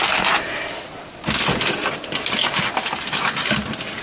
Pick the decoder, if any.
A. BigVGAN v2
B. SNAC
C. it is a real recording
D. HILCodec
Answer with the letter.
C